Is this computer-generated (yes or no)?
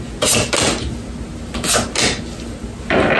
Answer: no